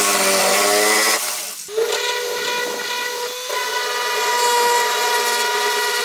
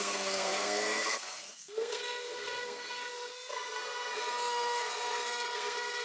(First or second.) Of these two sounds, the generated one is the second